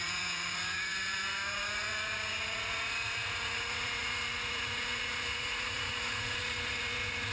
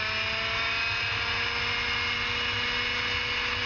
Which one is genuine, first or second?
second